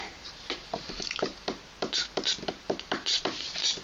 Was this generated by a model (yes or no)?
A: yes